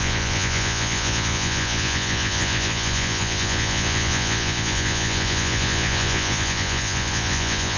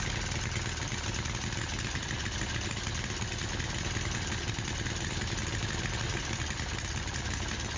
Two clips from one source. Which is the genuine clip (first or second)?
second